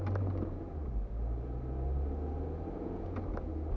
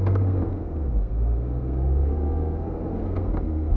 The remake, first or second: second